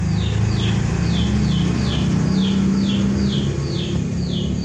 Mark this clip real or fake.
real